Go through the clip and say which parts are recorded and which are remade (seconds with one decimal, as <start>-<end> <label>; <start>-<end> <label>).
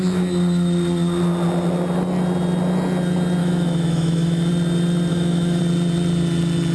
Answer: 0.0-3.4 recorded; 3.4-4.5 remade; 4.5-5.1 recorded; 5.1-5.6 remade; 5.6-6.7 recorded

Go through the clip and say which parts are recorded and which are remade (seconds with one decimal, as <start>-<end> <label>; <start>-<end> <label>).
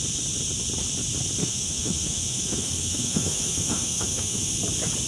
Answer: 0.0-1.4 recorded; 1.4-4.5 remade; 4.5-5.1 recorded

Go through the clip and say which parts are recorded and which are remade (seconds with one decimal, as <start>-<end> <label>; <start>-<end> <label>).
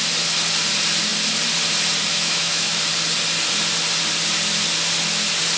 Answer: 0.0-2.1 recorded; 2.1-2.8 remade; 2.8-5.6 recorded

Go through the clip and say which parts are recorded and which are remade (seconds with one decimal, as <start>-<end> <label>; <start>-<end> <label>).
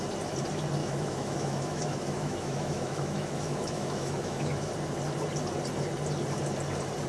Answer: 0.0-0.8 recorded; 0.8-4.7 remade; 4.7-7.1 recorded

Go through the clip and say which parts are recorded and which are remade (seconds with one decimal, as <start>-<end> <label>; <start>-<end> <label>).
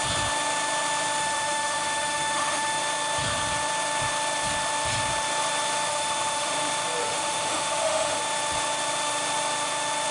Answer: 0.0-1.2 recorded; 1.2-2.8 remade; 2.8-5.9 recorded; 5.9-6.5 remade; 6.5-7.0 recorded; 7.0-8.2 remade; 8.2-10.1 recorded